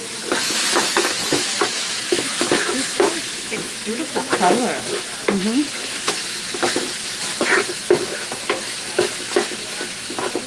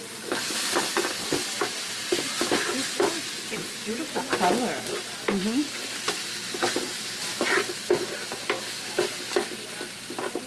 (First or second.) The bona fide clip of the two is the second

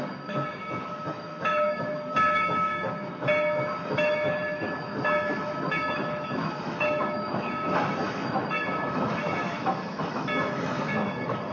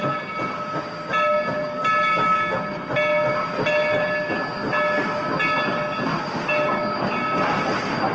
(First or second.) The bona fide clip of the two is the second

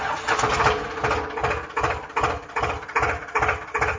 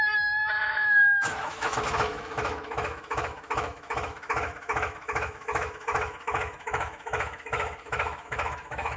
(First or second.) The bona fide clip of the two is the first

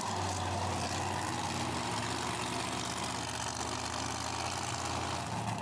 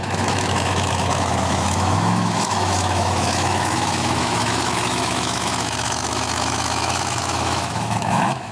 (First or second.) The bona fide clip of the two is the first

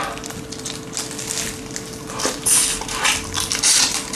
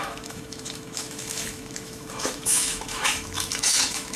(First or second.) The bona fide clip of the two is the first